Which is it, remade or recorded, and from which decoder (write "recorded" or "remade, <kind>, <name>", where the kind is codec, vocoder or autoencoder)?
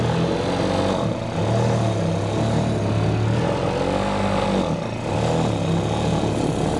recorded